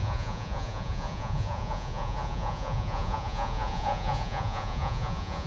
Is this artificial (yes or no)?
yes